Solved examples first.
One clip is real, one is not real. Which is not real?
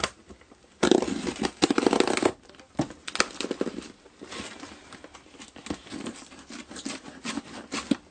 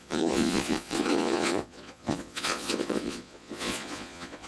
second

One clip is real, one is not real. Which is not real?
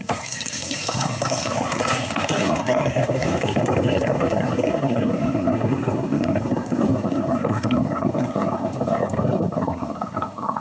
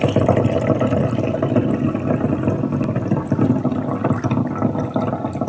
first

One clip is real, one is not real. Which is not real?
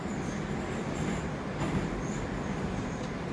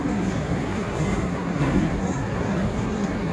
second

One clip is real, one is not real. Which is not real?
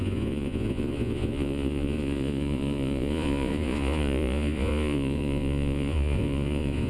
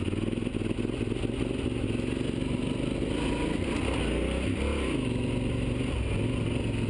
first